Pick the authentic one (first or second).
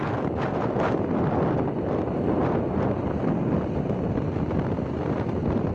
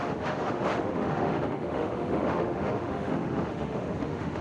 first